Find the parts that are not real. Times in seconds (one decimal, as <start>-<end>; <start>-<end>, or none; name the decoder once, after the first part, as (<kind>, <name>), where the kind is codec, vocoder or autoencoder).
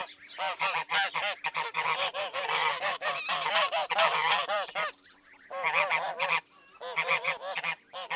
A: 0.0-2.4 (vocoder, BigVGAN v2); 2.9-6.4; 7.1-7.6